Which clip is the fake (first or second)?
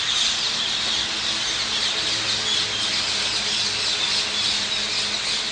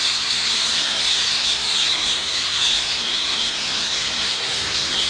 second